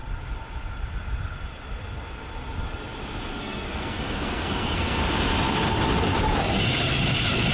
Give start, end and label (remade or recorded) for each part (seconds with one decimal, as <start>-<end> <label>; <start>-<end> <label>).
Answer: 0.0-3.4 recorded; 3.4-5.0 remade; 5.0-7.5 recorded